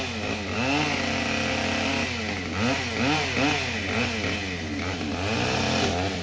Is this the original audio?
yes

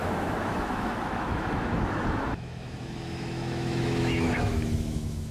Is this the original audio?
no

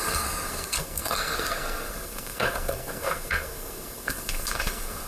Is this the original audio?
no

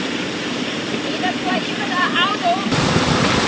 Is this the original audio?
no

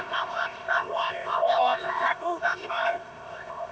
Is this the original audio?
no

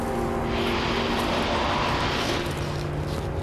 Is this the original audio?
yes